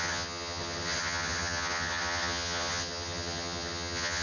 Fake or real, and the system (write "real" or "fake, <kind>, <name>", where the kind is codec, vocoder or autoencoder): fake, vocoder, HiFi-GAN